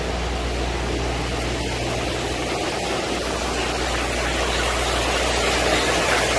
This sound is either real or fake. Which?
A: real